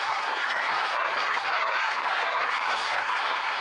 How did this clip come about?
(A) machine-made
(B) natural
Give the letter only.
A